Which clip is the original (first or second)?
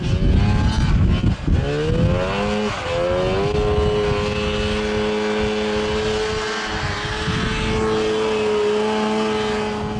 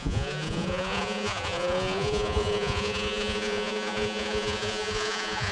first